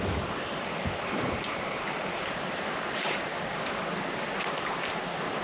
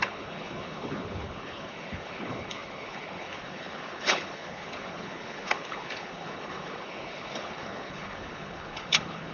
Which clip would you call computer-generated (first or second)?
second